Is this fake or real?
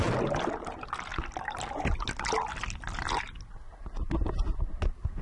real